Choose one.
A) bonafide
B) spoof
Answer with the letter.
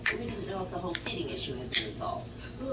A